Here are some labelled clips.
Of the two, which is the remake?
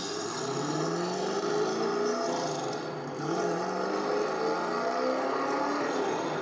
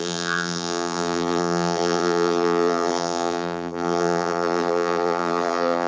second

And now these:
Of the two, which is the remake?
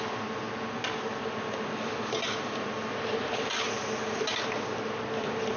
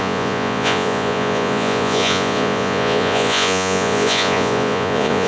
second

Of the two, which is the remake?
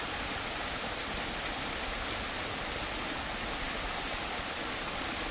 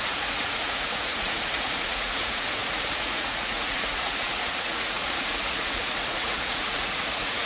second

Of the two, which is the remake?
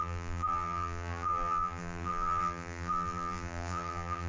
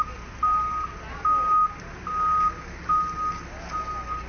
first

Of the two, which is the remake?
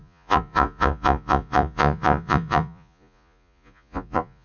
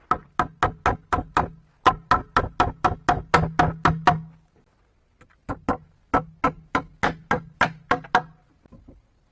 first